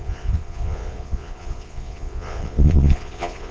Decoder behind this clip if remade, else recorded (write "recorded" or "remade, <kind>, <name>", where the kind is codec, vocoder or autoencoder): remade, vocoder, Vocos